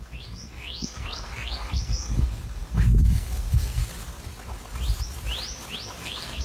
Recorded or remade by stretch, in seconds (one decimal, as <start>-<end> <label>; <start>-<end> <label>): 0.0-3.8 remade; 3.8-6.0 recorded; 6.0-6.4 remade